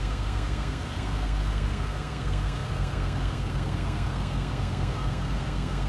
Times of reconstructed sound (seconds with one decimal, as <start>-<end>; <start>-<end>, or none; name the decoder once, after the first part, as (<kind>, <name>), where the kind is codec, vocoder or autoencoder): 0.0-5.9 (codec, SNAC)